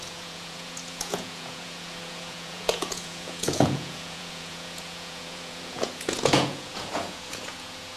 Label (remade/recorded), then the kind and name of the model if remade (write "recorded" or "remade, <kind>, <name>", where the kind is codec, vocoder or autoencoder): remade, vocoder, Vocos